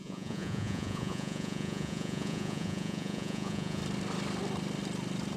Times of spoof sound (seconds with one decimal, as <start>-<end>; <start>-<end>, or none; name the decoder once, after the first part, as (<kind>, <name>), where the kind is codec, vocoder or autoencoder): 0.0-3.8 (vocoder, Vocos)